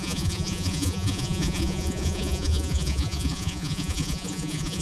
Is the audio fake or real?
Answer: fake